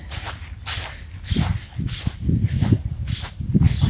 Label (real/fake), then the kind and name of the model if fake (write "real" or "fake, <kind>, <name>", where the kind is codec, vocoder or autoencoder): real